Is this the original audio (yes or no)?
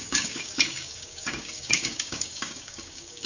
no